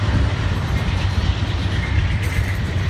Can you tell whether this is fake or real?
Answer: fake